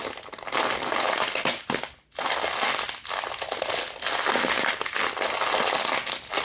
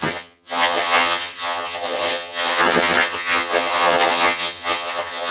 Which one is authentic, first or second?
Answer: first